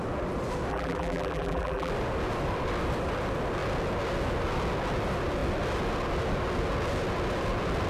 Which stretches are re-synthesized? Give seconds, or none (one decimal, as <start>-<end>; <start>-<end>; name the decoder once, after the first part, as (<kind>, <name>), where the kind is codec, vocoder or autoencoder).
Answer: 0.7-1.9 (vocoder, BigVGAN v2)